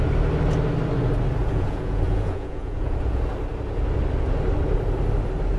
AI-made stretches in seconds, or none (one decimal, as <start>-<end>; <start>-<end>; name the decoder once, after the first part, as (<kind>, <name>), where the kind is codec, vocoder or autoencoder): 1.4-3.3 (vocoder, Vocos)